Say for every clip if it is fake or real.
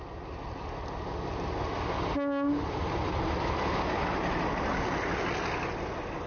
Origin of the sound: real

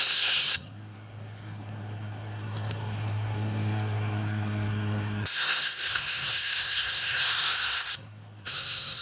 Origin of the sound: fake